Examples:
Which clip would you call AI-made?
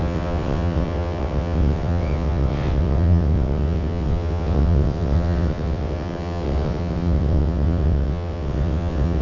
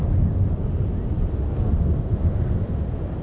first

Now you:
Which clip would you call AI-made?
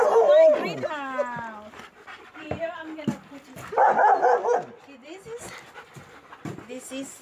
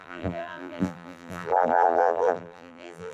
second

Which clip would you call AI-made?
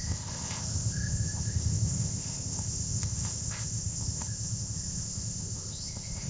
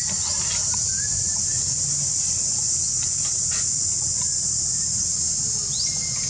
first